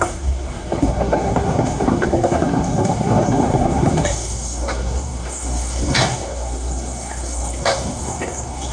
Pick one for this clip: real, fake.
fake